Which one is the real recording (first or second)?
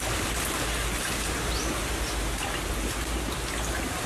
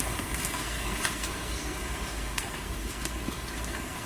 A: first